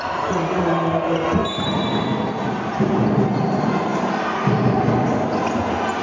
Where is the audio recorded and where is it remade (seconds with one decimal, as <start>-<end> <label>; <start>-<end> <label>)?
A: 0.0-6.0 recorded